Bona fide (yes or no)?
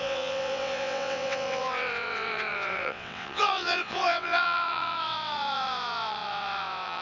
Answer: no